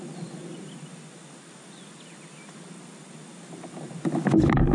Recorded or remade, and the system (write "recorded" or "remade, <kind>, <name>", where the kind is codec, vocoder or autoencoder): recorded